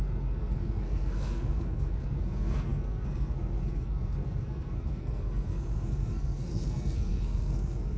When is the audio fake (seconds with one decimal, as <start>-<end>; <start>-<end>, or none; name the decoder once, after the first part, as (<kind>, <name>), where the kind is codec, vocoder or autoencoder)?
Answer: 0.0-8.0 (codec, SNAC)